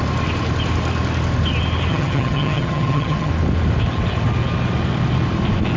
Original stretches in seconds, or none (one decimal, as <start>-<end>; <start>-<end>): 0.0-1.9; 3.3-5.8

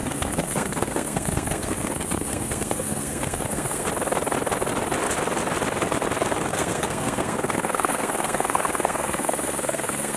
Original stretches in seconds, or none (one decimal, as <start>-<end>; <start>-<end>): 3.9-6.5

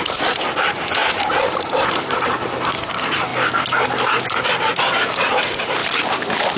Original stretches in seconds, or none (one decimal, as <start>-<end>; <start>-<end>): 3.3-4.6; 5.8-6.6